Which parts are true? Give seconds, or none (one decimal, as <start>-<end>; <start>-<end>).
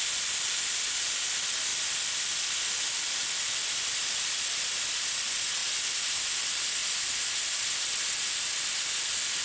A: 5.6-6.3; 6.8-9.4